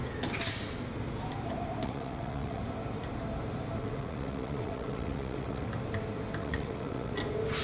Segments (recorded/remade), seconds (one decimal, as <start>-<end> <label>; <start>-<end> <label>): 0.0-1.8 recorded; 1.8-2.6 remade; 2.6-3.8 recorded; 3.8-5.7 remade; 5.7-6.4 recorded; 6.4-7.1 remade; 7.1-7.6 recorded